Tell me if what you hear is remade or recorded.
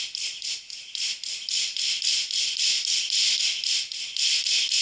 recorded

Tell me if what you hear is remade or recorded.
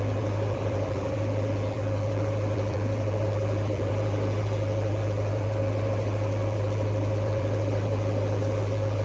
remade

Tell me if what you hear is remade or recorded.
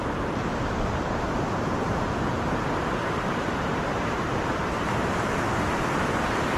remade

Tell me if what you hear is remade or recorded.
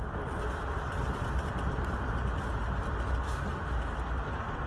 recorded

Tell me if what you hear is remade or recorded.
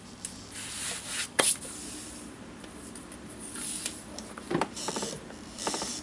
remade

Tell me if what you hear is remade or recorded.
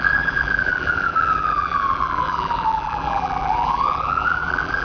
remade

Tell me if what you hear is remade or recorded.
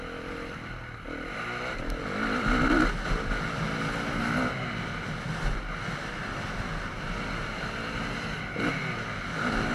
recorded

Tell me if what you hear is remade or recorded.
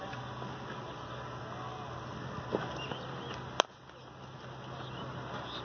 recorded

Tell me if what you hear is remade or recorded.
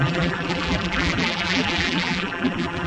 remade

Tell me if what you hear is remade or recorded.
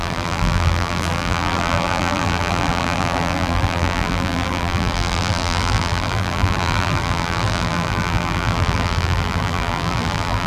remade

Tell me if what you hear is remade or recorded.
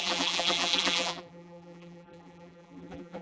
remade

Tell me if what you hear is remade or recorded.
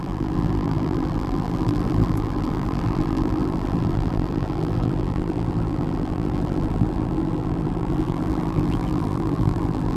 remade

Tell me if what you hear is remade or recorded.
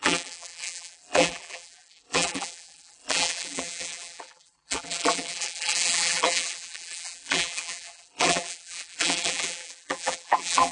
remade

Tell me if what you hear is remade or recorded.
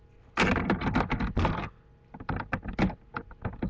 recorded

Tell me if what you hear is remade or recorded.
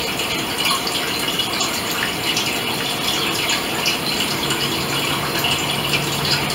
recorded